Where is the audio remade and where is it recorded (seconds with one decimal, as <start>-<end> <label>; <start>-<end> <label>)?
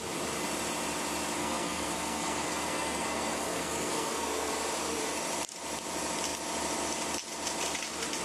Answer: 0.0-1.4 recorded; 1.4-4.5 remade; 4.5-8.2 recorded